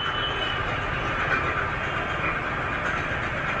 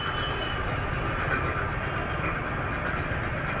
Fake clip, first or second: second